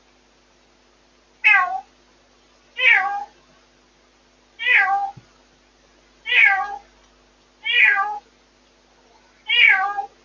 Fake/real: real